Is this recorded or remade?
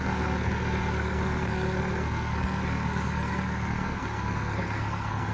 remade